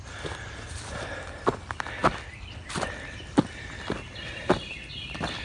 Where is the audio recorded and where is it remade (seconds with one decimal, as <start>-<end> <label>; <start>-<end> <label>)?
0.0-5.4 recorded